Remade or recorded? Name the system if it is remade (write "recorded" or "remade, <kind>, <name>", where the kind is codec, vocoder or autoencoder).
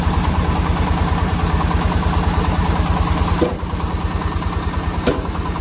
remade, vocoder, BigVGAN v2